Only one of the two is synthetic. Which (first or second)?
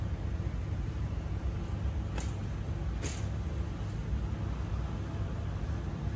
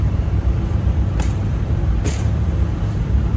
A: second